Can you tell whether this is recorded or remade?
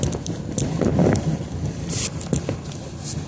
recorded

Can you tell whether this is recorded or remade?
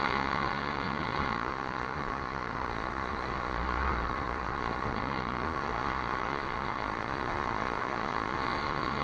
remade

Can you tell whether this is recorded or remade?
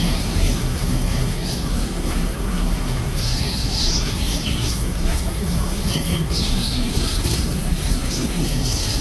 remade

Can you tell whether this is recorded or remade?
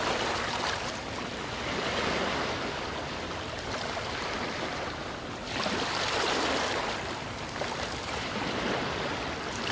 remade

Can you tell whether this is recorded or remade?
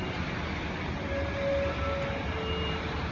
recorded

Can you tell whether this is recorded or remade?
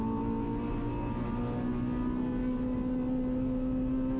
recorded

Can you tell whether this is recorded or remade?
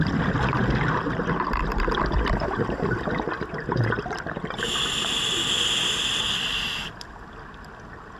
recorded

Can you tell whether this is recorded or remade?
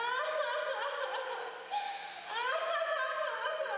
recorded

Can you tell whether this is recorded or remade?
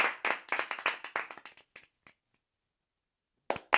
recorded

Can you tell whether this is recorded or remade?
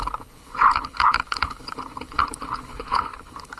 remade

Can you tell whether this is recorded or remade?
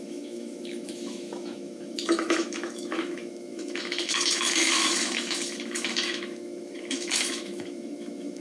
remade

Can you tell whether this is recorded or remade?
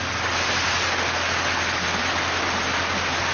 recorded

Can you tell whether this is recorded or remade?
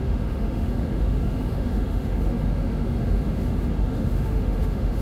remade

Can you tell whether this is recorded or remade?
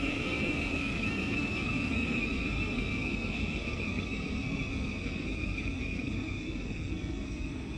remade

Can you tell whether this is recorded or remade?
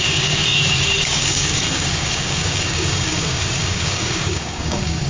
remade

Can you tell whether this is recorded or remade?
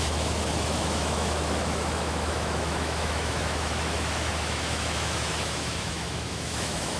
remade